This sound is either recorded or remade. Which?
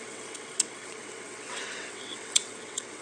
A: remade